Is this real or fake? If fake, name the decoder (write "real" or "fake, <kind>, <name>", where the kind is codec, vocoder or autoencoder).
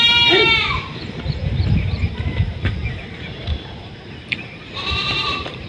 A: fake, vocoder, BigVGAN v2